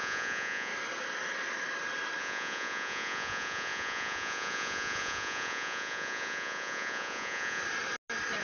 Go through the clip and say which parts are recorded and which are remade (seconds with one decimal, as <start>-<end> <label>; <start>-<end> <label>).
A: 0.0-0.7 remade; 0.7-2.2 recorded; 2.2-7.6 remade; 7.6-8.4 recorded